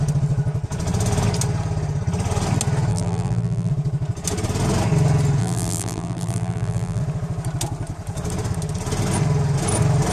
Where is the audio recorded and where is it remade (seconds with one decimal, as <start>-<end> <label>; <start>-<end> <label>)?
0.0-2.9 recorded; 2.9-3.7 remade; 3.7-5.4 recorded; 5.4-7.0 remade; 7.0-10.1 recorded